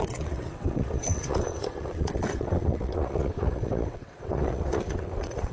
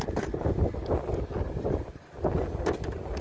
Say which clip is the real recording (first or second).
second